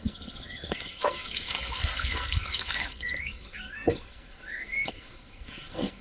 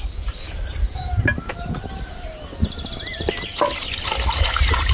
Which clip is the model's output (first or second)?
first